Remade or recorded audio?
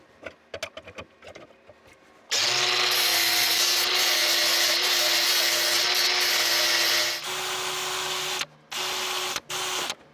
recorded